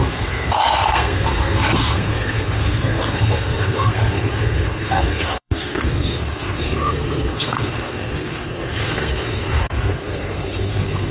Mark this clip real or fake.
fake